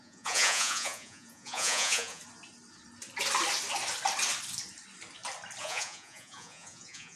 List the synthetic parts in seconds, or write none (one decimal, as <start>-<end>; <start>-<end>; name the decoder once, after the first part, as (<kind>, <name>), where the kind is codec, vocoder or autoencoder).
0.0-2.2 (vocoder, Vocos); 5.6-7.2